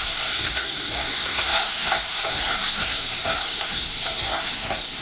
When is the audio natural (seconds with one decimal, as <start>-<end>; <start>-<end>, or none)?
none